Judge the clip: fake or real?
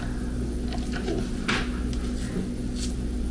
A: real